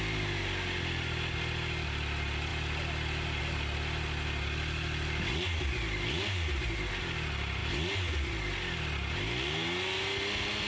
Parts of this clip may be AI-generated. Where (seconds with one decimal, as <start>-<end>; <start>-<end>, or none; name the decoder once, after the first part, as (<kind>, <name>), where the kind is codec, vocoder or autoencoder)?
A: none